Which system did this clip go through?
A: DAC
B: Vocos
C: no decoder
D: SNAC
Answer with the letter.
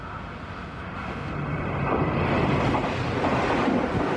C